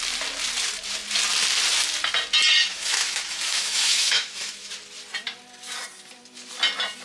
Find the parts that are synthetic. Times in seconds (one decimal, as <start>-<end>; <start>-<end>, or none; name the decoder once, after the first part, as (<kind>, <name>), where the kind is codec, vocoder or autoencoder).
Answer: 2.7-4.7 (autoencoder, DAC-VAE)